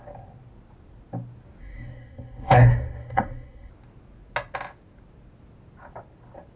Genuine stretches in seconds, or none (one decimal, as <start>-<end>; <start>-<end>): 0.0-1.6; 3.7-6.6